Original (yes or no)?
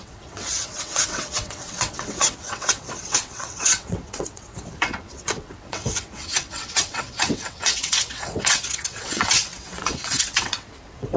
no